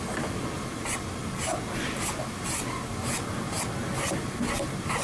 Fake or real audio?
real